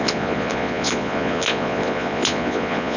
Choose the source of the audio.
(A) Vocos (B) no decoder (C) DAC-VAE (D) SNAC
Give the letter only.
A